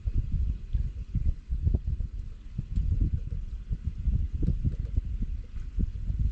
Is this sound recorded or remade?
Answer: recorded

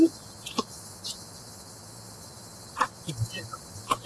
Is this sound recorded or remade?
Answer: recorded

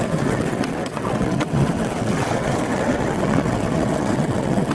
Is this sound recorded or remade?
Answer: remade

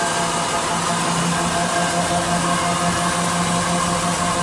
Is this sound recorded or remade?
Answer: recorded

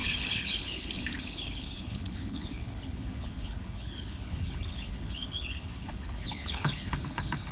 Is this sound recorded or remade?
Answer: remade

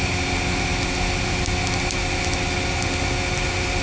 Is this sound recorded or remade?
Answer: recorded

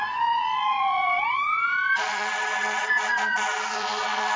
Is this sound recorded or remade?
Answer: remade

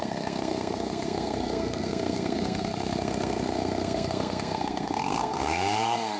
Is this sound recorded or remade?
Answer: remade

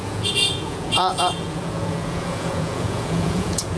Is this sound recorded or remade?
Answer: remade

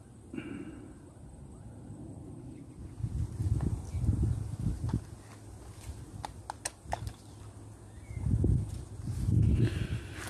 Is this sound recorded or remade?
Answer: recorded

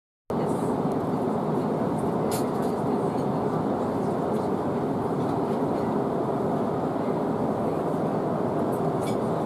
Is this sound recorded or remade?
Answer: recorded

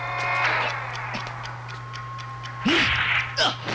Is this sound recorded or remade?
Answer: recorded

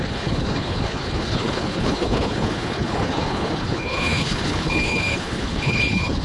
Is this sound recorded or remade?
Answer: remade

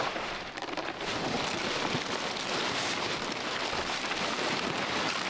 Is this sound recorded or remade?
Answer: recorded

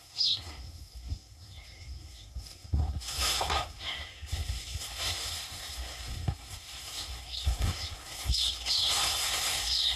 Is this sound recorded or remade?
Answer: remade